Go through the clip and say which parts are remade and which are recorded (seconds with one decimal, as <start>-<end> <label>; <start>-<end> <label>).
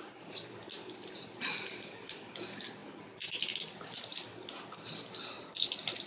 0.0-6.1 recorded